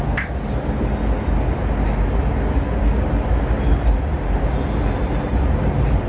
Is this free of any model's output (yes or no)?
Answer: yes